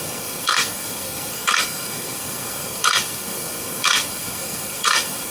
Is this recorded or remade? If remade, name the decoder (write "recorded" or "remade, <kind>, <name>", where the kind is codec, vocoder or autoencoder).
remade, codec, SNAC